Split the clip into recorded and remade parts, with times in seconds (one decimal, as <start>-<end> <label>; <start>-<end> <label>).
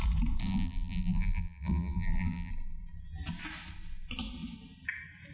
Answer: 0.0-0.4 recorded; 0.4-2.5 remade; 2.5-5.3 recorded